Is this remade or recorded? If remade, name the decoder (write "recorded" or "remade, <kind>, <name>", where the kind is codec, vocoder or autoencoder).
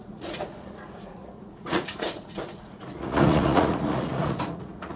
remade, vocoder, Vocos